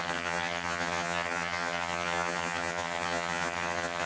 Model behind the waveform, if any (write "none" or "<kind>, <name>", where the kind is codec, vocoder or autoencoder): vocoder, HiFi-GAN